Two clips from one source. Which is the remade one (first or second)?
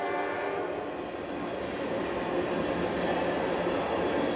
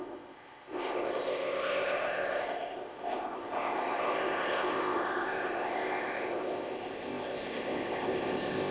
second